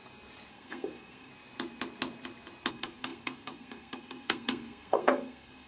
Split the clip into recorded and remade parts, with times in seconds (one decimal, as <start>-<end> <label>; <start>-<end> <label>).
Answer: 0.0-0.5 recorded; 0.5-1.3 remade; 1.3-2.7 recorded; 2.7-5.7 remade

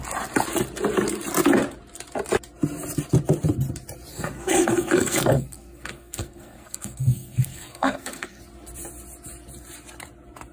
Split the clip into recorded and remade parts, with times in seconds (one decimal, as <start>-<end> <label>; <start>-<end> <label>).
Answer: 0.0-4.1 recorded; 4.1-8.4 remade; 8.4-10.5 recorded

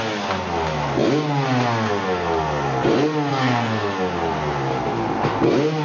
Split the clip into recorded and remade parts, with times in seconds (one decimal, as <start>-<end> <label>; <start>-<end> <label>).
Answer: 0.0-3.3 recorded; 3.3-3.9 remade; 3.9-5.8 recorded

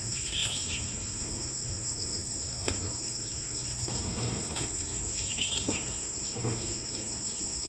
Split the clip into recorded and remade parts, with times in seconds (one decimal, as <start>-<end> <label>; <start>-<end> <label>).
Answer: 0.0-7.7 remade

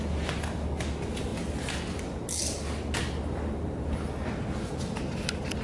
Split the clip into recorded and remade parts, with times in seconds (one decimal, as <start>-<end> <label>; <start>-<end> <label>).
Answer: 0.0-5.6 recorded

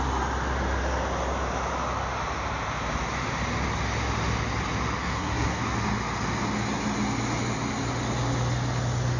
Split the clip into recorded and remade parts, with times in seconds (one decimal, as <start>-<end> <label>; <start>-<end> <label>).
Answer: 0.0-5.0 recorded; 5.0-5.6 remade; 5.6-9.2 recorded

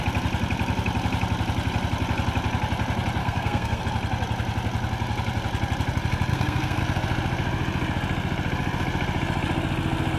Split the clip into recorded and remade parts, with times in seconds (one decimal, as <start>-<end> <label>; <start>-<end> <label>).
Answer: 0.0-3.2 recorded; 3.2-3.8 remade; 3.8-6.3 recorded; 6.3-6.8 remade; 6.8-10.2 recorded

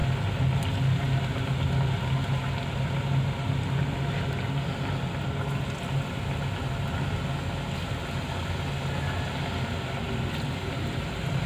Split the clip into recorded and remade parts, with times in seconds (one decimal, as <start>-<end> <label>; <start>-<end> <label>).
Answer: 0.0-11.5 recorded